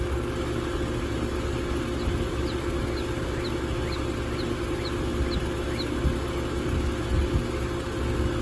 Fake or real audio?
real